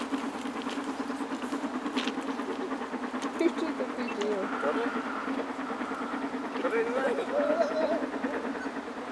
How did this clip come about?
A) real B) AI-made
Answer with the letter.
A